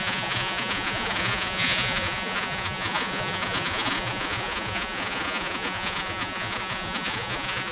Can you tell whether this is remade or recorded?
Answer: remade